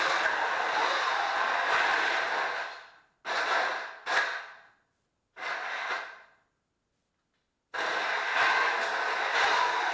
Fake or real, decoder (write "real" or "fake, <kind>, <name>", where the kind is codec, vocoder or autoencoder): real